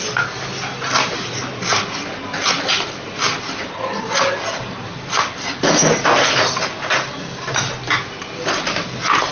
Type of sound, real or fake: real